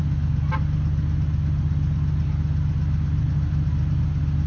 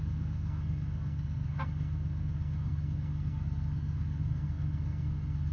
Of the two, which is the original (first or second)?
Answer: first